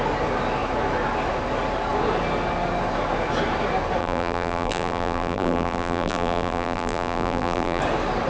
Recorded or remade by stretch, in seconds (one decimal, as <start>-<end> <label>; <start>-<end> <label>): 0.0-4.0 recorded; 4.0-7.8 remade; 7.8-8.3 recorded